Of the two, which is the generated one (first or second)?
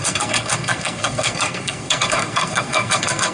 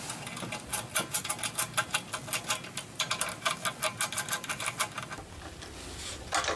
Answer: first